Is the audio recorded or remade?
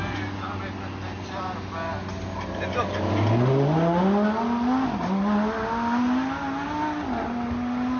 recorded